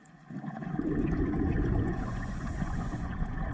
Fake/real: fake